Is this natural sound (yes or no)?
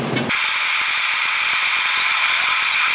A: yes